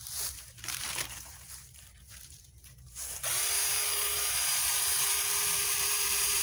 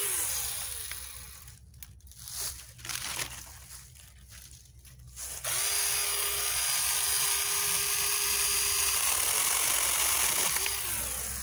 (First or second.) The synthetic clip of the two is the first